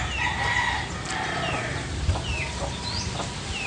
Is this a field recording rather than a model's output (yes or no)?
yes